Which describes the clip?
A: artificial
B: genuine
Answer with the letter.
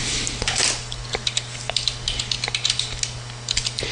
B